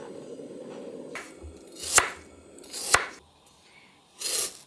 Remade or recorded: recorded